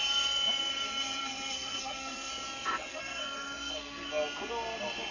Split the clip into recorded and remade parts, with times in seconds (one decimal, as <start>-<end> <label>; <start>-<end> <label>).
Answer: 0.0-1.2 recorded; 1.2-2.3 remade; 2.3-2.9 recorded; 2.9-4.1 remade; 4.1-5.1 recorded